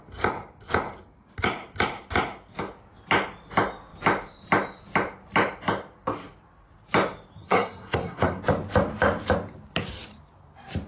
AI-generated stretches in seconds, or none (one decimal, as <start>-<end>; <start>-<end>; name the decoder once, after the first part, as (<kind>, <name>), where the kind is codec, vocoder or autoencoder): 7.4-8.4 (codec, SNAC)